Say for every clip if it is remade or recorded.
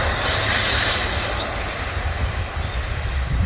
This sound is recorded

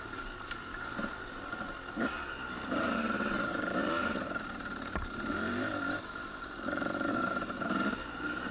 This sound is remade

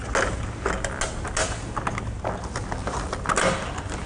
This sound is recorded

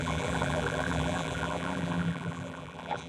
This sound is remade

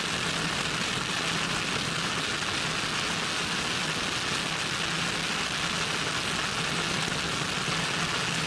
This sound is recorded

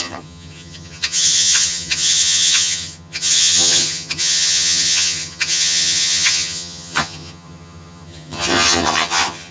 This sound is remade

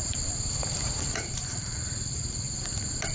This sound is remade